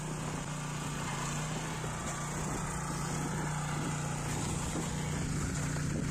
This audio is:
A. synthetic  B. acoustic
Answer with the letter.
B